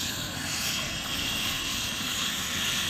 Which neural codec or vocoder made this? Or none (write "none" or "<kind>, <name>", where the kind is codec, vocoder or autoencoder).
codec, SNAC